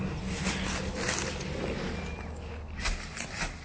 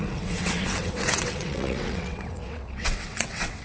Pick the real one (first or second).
first